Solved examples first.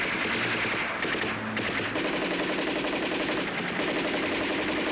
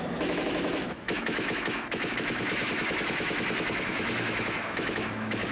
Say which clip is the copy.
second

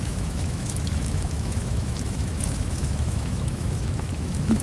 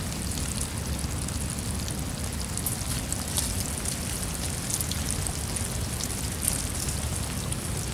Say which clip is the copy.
first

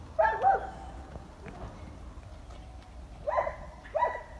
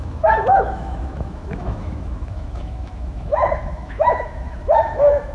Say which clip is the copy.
second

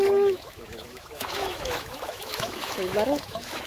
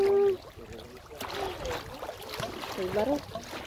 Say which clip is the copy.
first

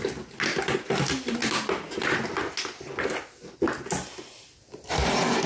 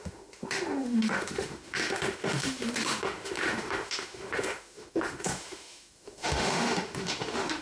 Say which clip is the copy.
second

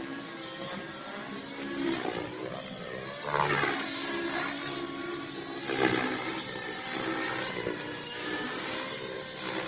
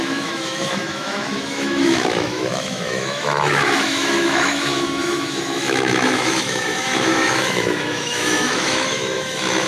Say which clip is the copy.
second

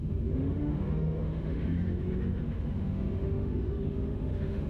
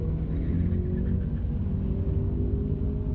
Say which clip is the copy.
first